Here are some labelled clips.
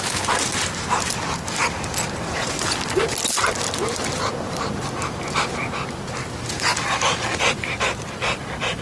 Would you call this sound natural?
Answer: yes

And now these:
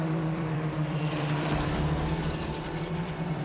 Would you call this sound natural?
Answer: no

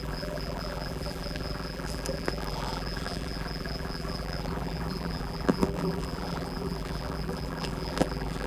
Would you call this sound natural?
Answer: no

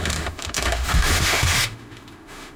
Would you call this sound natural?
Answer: no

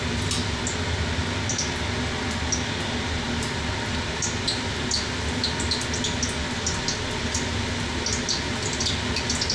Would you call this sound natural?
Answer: yes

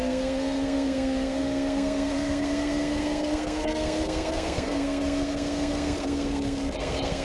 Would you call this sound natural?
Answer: no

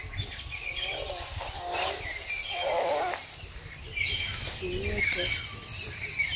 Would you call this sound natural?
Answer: yes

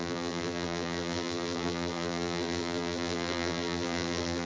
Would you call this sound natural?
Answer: no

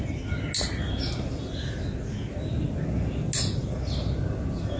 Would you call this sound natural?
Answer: yes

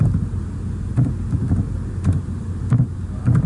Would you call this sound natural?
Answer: yes